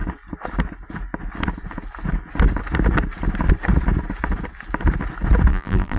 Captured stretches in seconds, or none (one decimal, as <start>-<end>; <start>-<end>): 0.0-5.5